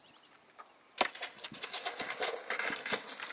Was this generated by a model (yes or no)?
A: no